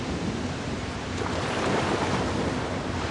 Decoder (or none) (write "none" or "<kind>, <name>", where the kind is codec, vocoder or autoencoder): vocoder, BigVGAN v2